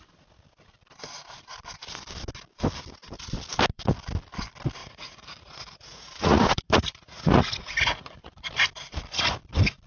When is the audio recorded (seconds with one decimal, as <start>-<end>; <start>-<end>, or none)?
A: 0.0-4.8; 8.5-9.9